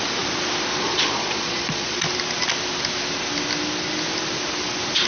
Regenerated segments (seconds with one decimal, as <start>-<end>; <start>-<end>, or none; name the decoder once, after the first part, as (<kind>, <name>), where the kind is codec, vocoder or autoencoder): 0.7-2.0 (vocoder, Vocos)